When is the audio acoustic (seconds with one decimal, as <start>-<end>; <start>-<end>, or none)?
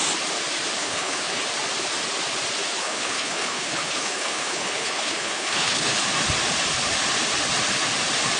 0.0-0.8; 1.4-2.8; 6.0-8.4